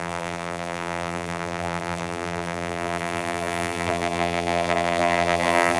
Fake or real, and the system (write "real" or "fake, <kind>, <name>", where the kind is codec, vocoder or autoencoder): fake, vocoder, BigVGAN v2